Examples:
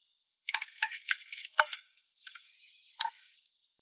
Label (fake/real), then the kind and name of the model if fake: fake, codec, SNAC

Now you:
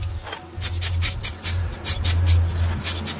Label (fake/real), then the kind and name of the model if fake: real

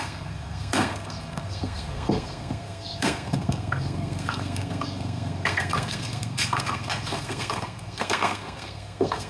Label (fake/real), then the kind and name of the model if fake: fake, codec, SNAC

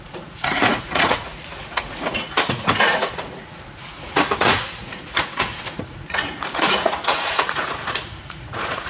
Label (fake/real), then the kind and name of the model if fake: fake, vocoder, Vocos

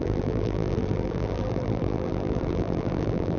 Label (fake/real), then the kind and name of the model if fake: fake, vocoder, BigVGAN v2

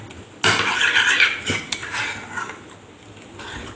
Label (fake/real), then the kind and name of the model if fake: real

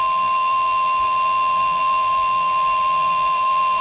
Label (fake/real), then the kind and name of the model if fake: fake, vocoder, BigVGAN v2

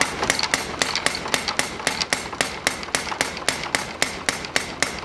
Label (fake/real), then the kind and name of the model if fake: real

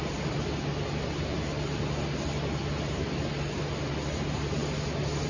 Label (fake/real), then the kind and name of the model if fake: real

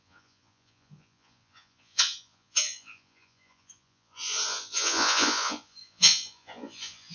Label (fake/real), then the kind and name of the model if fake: fake, vocoder, Vocos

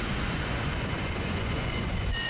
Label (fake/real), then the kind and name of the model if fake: fake, vocoder, Vocos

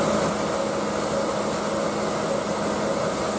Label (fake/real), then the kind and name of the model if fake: real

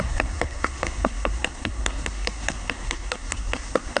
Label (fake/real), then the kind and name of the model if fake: fake, codec, SNAC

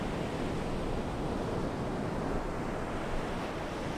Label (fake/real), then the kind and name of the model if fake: real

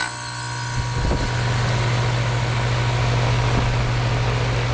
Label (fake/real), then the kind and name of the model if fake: real